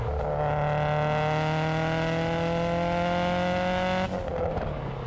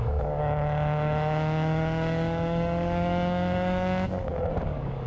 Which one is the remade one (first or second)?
second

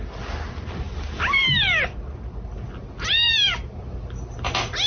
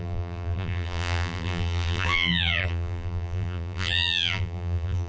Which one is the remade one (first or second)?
second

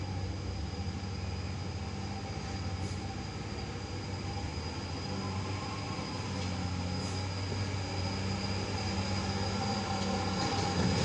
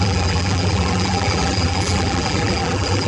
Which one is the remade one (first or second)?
second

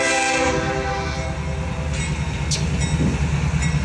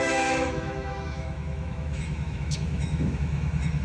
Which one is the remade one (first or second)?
second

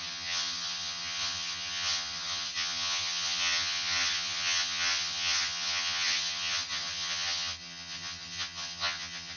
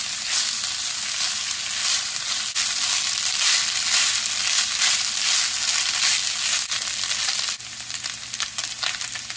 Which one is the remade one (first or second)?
first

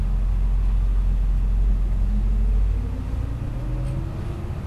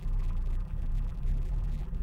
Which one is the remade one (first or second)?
second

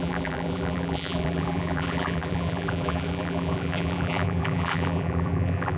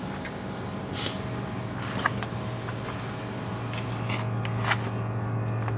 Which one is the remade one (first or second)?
first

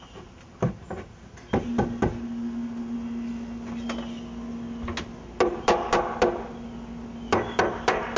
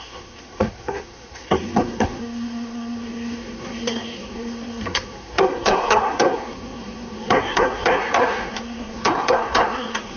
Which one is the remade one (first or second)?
second